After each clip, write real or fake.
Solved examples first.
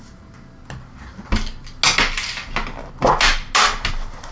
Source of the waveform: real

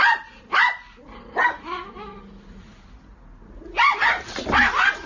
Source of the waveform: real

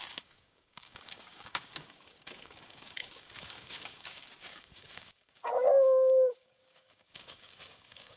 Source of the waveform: fake